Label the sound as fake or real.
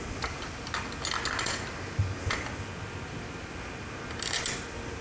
real